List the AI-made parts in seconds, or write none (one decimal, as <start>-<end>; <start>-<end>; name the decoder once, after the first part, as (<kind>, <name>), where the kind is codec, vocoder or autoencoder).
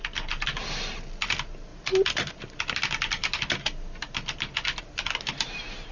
none